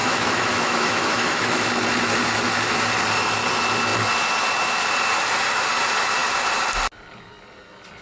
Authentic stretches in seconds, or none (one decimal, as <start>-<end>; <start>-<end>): 1.7-8.0